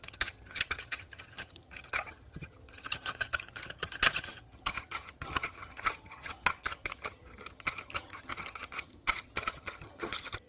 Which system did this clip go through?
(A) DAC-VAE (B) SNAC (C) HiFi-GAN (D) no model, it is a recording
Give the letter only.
C